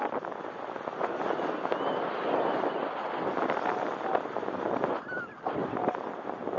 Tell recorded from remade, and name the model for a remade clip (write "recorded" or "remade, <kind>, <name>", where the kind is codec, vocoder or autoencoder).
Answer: recorded